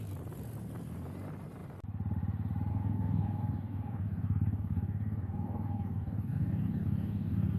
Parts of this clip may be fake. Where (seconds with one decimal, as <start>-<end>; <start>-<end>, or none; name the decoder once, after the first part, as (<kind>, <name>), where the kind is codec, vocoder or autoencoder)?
2.7-7.6 (codec, DAC)